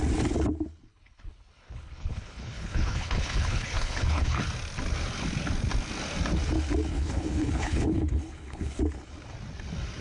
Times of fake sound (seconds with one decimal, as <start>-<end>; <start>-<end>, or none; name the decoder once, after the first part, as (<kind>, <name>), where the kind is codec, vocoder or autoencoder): 0.9-4.4 (codec, HILCodec); 6.9-8.8